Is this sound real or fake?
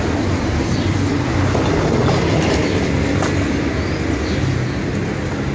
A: real